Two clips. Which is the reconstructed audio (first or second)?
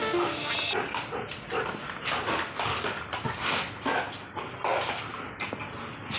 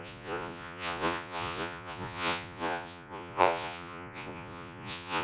second